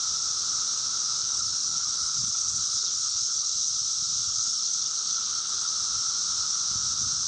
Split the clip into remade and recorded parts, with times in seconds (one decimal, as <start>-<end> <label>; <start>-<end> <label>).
0.0-1.2 recorded; 1.2-3.7 remade; 3.7-4.3 recorded; 4.3-5.7 remade; 5.7-7.3 recorded